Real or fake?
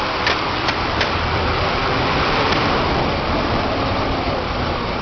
fake